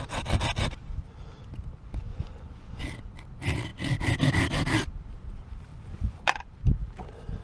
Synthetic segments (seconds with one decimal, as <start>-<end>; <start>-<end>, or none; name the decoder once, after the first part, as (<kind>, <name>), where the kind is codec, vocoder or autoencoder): 2.1-2.8 (vocoder, Vocos); 5.7-6.4